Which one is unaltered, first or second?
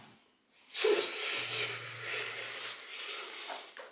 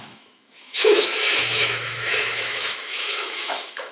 first